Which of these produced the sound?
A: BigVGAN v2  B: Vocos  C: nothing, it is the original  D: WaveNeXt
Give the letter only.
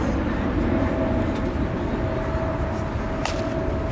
C